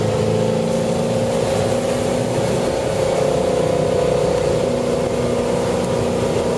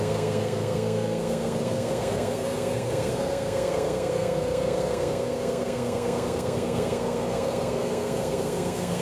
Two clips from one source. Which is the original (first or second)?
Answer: first